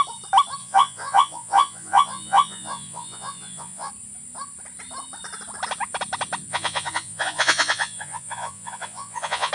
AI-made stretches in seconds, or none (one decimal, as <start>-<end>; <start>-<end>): 0.6-3.9; 6.5-9.5